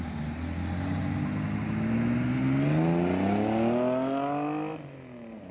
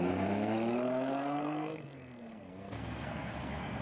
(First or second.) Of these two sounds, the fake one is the second